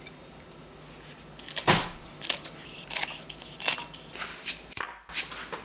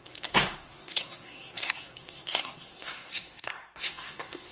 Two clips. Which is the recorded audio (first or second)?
first